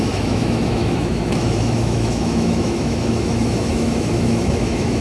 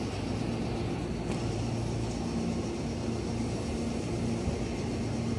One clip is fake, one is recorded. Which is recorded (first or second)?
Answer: second